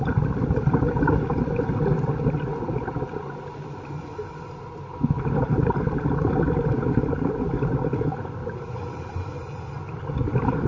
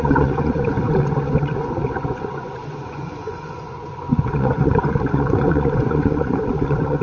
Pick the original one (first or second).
first